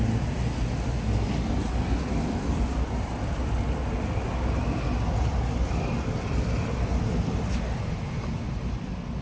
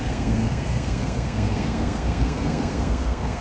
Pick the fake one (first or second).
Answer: second